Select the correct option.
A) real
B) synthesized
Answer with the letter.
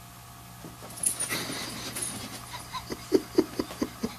A